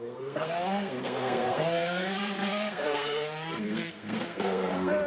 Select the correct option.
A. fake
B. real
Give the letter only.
A